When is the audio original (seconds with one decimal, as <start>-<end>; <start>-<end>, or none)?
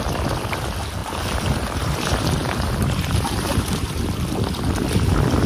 0.0-1.0; 4.0-5.5